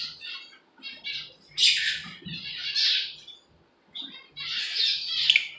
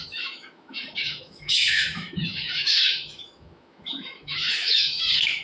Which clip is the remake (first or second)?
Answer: second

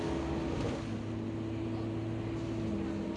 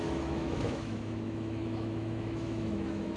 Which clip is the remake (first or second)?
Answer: second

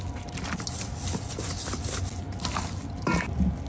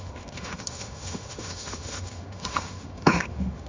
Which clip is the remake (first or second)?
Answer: second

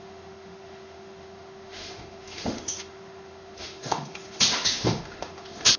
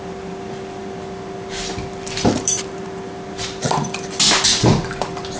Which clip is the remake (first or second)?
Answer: first